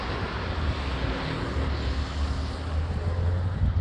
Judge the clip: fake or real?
real